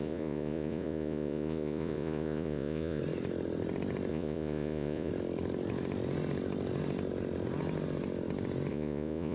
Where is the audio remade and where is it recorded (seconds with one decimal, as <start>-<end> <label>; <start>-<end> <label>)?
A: 0.0-3.0 remade; 3.0-4.1 recorded; 4.1-5.1 remade; 5.1-8.7 recorded; 8.7-9.3 remade